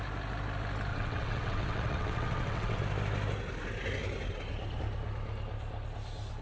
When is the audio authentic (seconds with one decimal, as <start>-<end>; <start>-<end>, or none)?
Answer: 0.0-0.9; 2.8-6.4

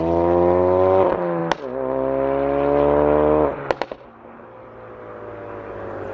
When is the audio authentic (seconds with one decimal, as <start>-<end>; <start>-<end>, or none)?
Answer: 0.0-6.1

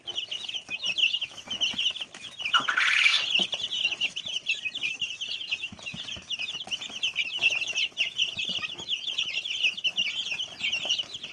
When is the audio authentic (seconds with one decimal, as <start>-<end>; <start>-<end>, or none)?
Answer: 0.0-3.1; 5.0-11.3